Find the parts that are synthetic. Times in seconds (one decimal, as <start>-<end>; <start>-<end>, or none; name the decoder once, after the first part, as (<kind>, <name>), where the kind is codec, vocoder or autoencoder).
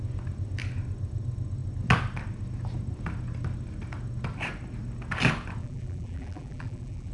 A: 5.6-7.1 (vocoder, BigVGAN v2)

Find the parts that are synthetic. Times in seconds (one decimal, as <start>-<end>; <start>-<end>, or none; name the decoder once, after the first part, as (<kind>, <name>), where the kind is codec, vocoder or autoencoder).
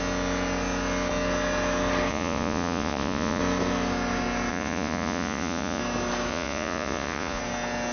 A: 2.1-3.4 (vocoder, Vocos); 4.5-5.8; 6.3-7.4